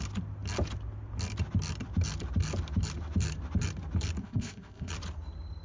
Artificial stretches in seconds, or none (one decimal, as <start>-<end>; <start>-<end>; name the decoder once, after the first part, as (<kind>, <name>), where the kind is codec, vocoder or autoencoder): 4.2-4.9 (codec, ZipCodec)